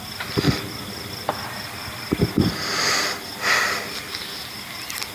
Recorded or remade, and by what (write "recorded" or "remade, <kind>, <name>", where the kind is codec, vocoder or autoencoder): recorded